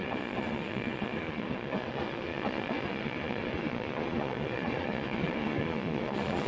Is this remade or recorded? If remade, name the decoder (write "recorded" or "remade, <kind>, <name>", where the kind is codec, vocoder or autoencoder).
remade, vocoder, Vocos